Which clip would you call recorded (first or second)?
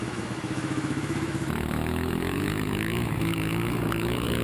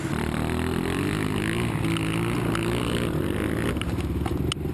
second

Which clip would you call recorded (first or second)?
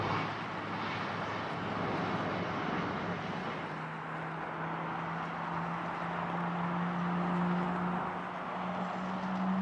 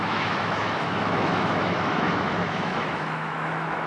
first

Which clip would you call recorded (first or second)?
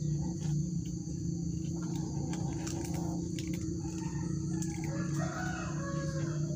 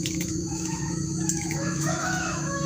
first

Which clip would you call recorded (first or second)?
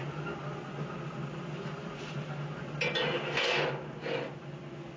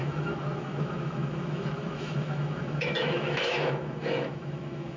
first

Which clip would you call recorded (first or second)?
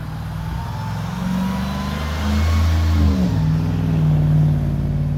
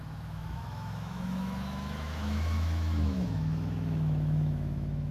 first